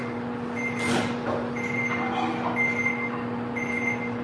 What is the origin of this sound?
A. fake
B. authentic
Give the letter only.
B